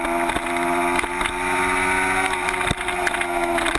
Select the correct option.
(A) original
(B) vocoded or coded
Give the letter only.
A